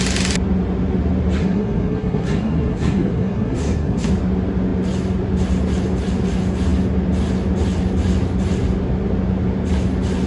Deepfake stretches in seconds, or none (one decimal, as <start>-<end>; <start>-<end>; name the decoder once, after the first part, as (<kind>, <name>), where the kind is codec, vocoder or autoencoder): 1.4-4.1 (codec, SNAC)